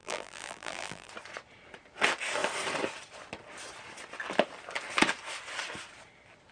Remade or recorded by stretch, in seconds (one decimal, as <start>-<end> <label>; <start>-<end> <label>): 0.0-1.1 remade; 1.1-6.5 recorded